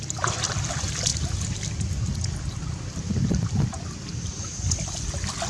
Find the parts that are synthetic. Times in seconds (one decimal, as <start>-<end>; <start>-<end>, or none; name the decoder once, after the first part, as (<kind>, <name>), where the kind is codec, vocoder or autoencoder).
1.1-4.4 (vocoder, BigVGAN v2)